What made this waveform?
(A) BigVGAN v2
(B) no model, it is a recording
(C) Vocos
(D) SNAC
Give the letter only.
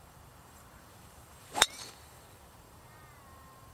A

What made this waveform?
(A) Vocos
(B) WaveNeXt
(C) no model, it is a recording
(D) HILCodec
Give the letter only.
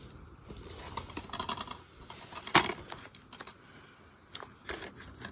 C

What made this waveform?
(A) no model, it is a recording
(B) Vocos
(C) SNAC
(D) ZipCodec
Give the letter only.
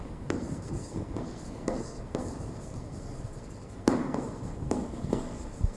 C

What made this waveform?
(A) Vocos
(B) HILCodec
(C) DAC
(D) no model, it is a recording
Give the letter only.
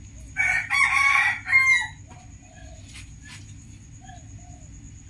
D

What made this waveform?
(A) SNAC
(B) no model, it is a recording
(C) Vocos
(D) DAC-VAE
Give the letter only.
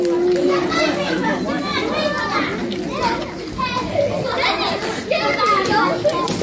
B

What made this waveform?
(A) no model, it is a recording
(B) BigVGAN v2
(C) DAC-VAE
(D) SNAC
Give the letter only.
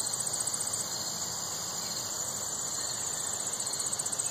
A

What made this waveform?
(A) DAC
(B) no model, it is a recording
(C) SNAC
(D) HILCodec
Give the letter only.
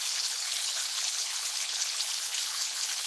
D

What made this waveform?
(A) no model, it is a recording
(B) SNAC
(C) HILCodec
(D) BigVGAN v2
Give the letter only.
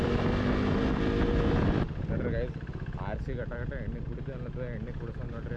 A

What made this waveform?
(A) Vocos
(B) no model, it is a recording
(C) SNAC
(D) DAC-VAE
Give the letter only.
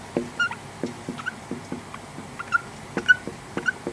B